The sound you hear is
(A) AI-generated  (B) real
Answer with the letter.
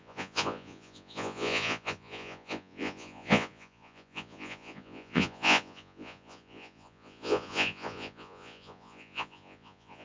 A